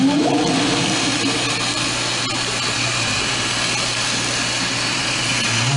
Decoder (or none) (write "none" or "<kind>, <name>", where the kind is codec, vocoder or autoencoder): none